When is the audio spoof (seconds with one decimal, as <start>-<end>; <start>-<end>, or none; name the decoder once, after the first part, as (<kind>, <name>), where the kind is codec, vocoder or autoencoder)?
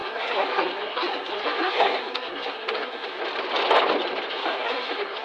0.0-3.2 (codec, SNAC); 4.3-5.2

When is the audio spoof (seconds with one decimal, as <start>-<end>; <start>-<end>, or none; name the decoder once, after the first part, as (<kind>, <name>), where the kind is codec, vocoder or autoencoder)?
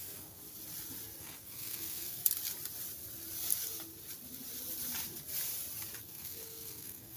0.0-0.4 (codec, SNAC); 1.2-2.2; 6.0-7.2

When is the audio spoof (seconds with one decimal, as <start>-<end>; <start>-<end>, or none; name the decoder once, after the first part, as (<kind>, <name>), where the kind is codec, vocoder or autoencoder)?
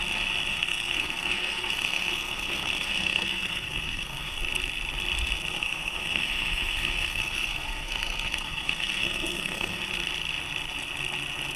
0.5-4.4 (codec, SNAC); 5.6-9.8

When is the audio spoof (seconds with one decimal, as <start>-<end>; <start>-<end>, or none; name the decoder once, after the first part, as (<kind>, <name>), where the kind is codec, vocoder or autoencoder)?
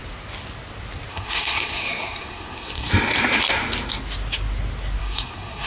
1.1-2.9 (codec, SNAC); 5.0-5.7